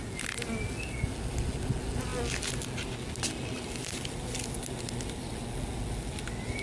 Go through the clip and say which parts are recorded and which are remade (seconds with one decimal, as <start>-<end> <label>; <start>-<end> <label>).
0.0-6.6 recorded